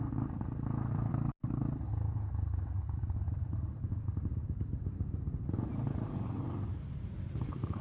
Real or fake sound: fake